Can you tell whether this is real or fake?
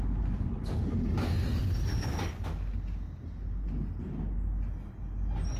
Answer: real